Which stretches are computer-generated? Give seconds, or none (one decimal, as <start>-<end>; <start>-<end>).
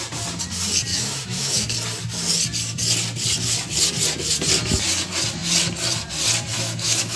0.9-1.7; 6.5-7.2